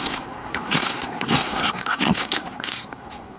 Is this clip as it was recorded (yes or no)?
no